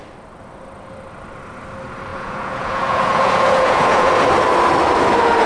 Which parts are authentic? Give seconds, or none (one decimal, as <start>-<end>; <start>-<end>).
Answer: 0.0-2.1; 4.1-5.5